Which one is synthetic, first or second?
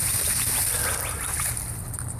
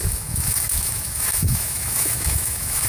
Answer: second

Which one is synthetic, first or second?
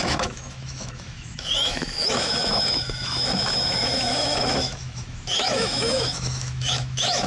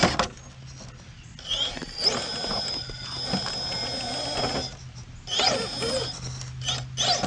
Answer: first